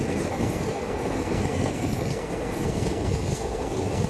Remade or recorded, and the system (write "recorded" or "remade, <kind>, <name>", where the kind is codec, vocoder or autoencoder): remade, codec, SNAC